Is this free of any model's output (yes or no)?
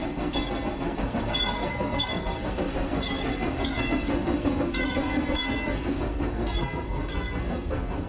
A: no